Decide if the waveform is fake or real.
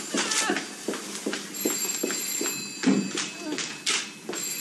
real